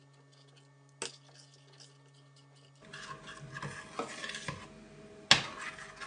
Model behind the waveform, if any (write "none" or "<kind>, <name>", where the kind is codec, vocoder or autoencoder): none